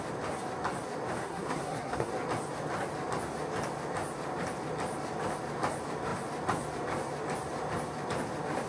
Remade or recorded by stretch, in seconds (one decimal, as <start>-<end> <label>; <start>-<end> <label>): 0.0-1.2 recorded; 1.2-2.1 remade; 2.1-8.7 recorded